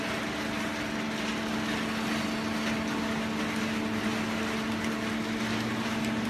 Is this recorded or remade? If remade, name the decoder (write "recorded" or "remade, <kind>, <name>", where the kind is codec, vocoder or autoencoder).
recorded